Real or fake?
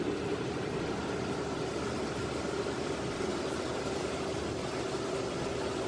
real